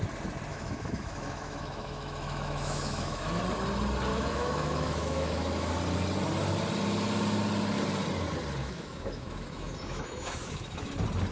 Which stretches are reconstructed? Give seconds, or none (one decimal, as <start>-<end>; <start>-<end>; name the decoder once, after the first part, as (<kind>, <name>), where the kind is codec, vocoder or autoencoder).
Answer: 0.5-3.4 (autoencoder, DAC-VAE); 4.1-5.7; 8.6-10.9